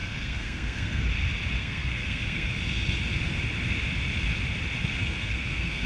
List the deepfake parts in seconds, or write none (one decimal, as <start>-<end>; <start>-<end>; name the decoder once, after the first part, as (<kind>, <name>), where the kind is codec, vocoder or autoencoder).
0.0-1.0 (codec, SNAC); 1.6-2.5; 5.0-5.9